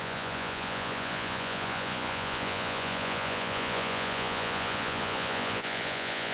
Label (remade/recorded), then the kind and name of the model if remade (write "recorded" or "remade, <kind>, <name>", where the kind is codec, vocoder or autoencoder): remade, vocoder, Vocos